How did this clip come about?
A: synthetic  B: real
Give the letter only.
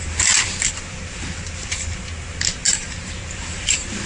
A